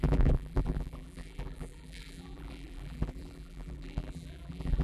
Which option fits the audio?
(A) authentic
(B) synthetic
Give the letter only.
B